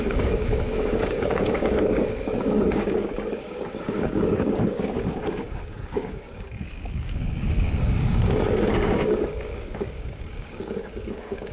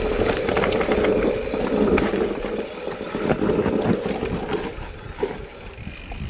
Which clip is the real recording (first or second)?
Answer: second